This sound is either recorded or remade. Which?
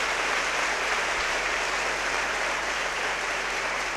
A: remade